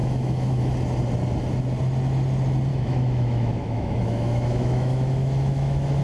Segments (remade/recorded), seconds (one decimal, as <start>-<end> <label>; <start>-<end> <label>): 0.0-0.6 remade; 0.6-2.7 recorded; 2.7-6.0 remade